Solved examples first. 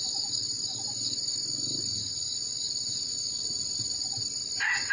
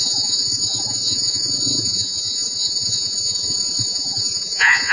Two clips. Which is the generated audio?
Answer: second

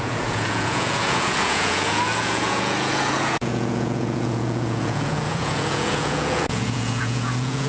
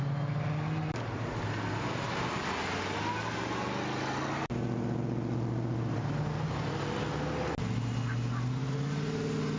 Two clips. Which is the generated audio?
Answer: first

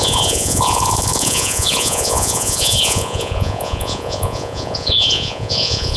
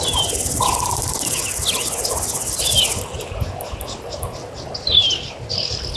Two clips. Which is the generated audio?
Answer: first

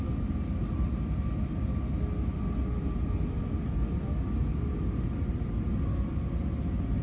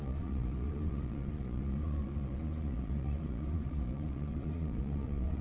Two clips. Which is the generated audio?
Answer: second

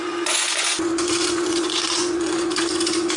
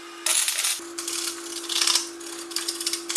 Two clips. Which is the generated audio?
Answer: first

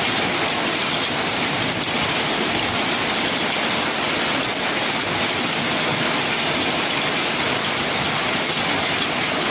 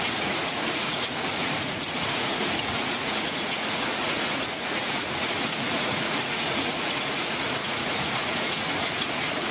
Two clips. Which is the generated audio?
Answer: second